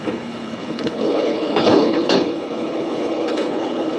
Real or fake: fake